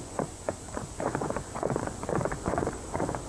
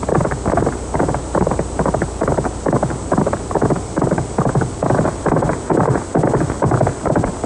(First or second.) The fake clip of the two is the first